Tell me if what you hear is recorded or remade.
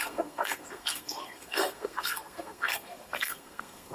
remade